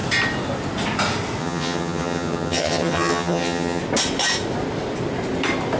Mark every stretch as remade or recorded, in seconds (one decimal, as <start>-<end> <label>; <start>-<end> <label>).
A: 0.0-1.4 recorded; 1.4-3.8 remade; 3.8-5.8 recorded

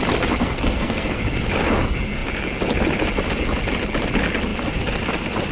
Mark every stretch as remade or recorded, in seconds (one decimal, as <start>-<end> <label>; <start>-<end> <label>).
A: 0.0-0.4 recorded; 0.4-1.2 remade; 1.2-5.5 recorded

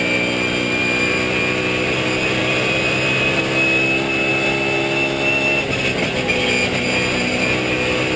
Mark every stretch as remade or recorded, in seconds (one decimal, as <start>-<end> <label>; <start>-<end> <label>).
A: 0.0-0.8 recorded; 0.8-1.4 remade; 1.4-2.4 recorded; 2.4-3.4 remade; 3.4-8.2 recorded

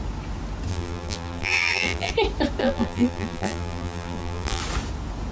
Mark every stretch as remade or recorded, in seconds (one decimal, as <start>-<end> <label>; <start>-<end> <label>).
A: 0.0-0.7 recorded; 0.7-2.1 remade; 2.1-2.6 recorded; 2.6-4.6 remade; 4.6-5.3 recorded